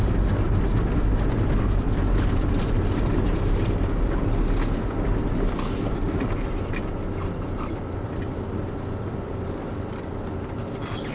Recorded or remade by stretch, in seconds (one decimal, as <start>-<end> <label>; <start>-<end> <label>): 0.0-11.1 recorded